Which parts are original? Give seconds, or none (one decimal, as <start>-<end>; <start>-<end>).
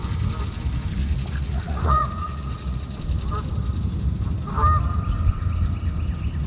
0.0-1.0; 3.0-6.5